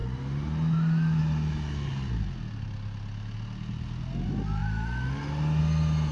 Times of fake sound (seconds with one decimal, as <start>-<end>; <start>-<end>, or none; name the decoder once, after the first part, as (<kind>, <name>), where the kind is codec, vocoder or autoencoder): none